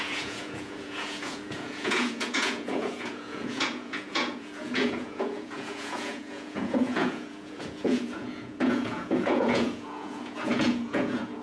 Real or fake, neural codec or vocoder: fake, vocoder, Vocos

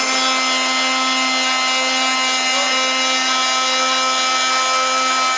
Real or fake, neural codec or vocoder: real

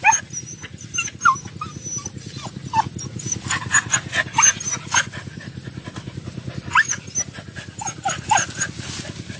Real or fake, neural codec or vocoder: real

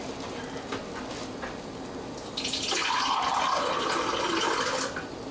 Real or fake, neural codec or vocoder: real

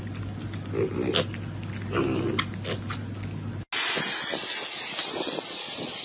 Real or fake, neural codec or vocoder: real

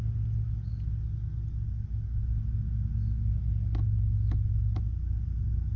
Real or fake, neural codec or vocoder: real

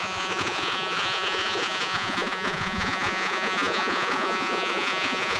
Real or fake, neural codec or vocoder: fake, vocoder, Vocos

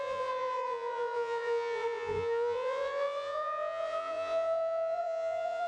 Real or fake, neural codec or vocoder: fake, vocoder, Vocos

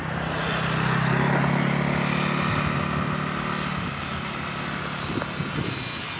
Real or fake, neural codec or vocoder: real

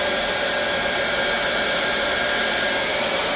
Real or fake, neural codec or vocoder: real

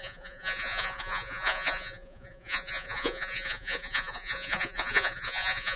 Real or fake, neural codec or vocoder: fake, vocoder, Vocos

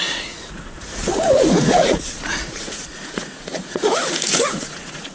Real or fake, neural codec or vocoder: fake, vocoder, Vocos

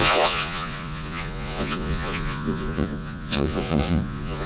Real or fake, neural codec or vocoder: fake, vocoder, Vocos